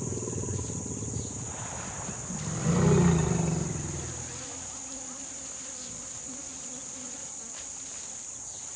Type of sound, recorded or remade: recorded